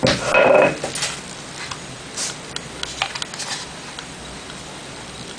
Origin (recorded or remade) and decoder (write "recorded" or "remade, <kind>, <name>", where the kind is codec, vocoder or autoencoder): recorded